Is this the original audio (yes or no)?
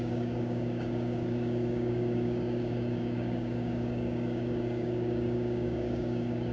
no